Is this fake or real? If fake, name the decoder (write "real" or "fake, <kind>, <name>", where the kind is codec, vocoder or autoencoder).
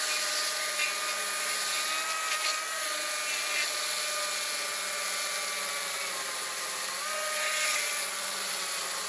real